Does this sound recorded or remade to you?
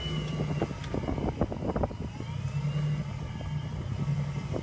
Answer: recorded